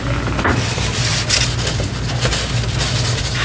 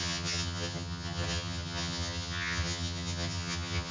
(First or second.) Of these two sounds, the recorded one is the first